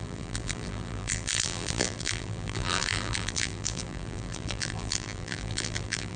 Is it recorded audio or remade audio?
remade